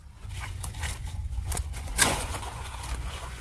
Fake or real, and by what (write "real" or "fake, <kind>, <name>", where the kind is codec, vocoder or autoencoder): fake, vocoder, Vocos